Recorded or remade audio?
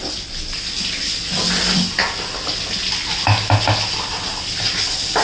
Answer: recorded